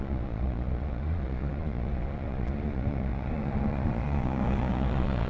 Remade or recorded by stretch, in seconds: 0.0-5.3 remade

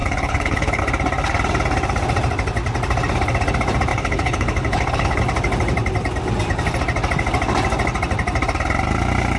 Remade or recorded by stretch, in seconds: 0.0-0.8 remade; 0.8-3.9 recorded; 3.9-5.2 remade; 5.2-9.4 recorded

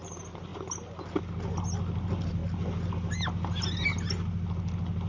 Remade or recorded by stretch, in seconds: 0.0-5.1 recorded

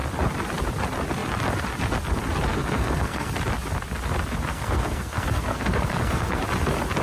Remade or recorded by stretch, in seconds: 0.0-2.5 recorded; 2.5-3.3 remade; 3.3-4.5 recorded; 4.5-6.4 remade; 6.4-7.0 recorded

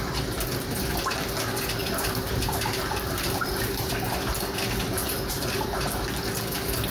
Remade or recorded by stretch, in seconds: 0.0-1.8 recorded; 1.8-4.0 remade; 4.0-5.0 recorded; 5.0-5.8 remade; 5.8-6.9 recorded

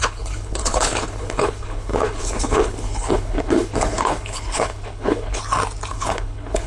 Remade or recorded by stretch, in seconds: 0.0-5.4 remade; 5.4-5.9 recorded; 5.9-6.7 remade

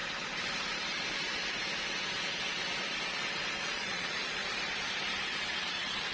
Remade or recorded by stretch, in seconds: 0.0-3.6 recorded; 3.6-4.4 remade; 4.4-5.6 recorded; 5.6-6.1 remade